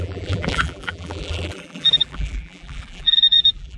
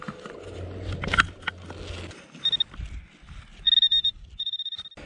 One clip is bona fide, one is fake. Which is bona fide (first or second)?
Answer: second